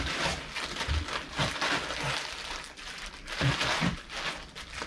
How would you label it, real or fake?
real